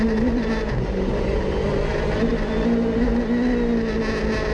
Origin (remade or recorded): recorded